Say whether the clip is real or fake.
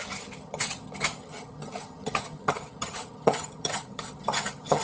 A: fake